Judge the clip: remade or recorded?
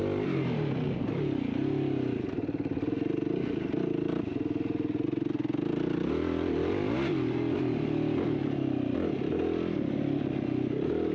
recorded